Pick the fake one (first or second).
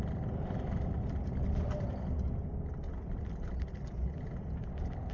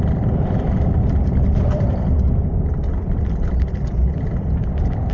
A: second